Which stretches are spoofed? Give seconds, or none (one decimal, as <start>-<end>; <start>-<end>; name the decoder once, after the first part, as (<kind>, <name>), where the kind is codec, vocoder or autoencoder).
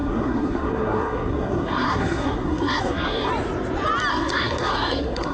0.0-3.3 (codec, SNAC); 4.1-5.3